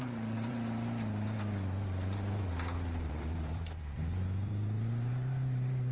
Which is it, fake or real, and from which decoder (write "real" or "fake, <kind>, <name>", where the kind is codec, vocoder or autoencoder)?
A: fake, vocoder, BigVGAN v2